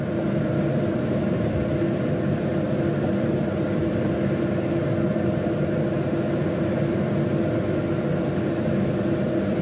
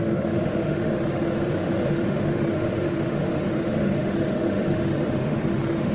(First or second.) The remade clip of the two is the second